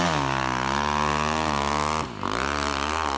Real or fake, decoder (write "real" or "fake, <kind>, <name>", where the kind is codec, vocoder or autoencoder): real